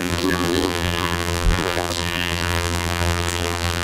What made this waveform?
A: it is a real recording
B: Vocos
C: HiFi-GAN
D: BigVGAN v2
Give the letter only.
D